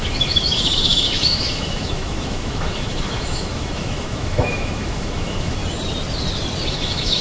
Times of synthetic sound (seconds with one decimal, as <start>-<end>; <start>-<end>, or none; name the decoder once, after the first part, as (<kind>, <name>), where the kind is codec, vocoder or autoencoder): 0.0-5.6 (autoencoder, DAC-VAE); 6.7-7.2